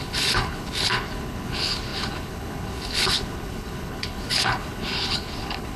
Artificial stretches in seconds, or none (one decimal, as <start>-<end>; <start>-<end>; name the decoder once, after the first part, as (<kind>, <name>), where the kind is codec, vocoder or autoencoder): 0.0-5.8 (codec, HILCodec)